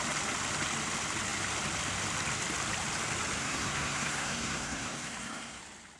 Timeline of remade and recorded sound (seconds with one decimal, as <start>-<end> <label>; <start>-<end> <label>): 0.0-3.4 recorded; 3.4-5.6 remade; 5.6-6.0 recorded